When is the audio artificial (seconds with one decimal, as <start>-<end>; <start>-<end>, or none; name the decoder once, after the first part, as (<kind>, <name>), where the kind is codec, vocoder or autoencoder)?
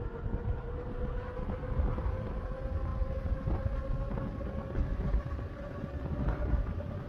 none